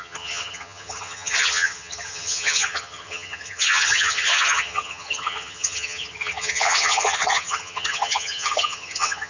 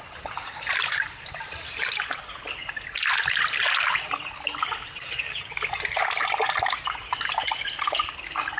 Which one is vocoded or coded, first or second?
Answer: first